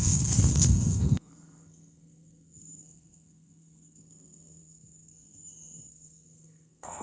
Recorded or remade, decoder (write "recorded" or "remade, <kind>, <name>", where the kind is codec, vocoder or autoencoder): remade, codec, SNAC